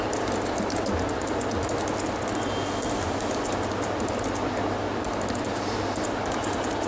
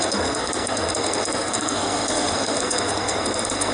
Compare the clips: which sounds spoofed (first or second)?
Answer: second